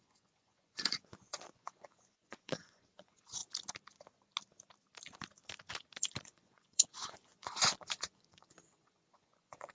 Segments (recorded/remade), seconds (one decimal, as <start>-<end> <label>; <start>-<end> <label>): 0.0-3.4 remade; 3.4-6.2 recorded; 6.2-9.7 remade